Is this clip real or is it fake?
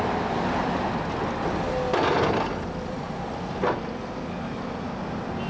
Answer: real